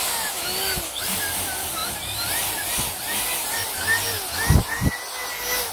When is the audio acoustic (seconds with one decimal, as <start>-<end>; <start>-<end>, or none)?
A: 0.0-1.8; 2.6-5.7